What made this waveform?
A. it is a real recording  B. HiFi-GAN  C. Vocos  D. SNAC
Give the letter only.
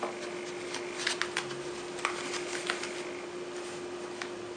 A